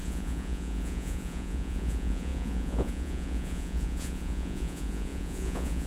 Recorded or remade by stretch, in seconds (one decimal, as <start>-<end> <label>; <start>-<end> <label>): 0.0-5.9 remade